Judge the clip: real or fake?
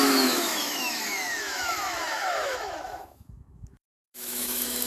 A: fake